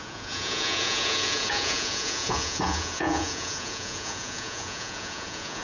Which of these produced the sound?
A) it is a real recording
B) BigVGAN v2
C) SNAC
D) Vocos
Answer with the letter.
D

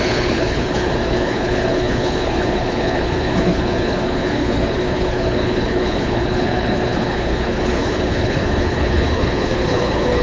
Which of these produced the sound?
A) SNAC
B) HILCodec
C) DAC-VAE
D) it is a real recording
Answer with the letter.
B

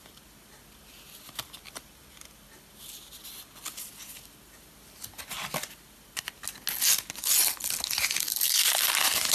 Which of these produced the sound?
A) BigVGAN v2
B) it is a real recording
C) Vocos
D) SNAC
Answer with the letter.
B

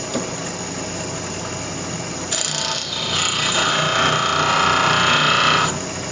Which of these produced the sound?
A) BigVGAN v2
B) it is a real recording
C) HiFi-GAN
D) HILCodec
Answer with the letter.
B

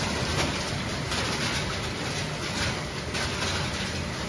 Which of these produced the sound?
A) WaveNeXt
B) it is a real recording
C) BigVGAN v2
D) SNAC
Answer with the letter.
C